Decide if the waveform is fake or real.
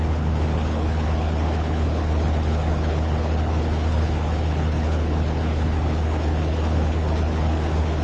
fake